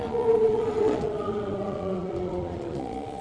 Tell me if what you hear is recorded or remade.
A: remade